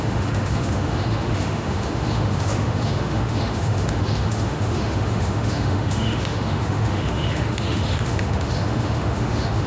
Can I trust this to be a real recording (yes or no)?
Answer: no